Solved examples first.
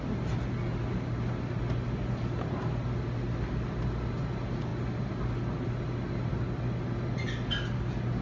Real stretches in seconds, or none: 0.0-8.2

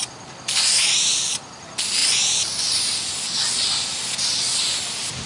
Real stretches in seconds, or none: 0.0-5.3

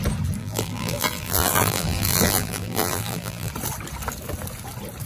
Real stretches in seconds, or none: 0.0-0.4; 3.5-5.1

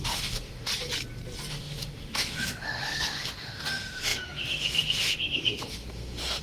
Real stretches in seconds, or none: 0.7-1.5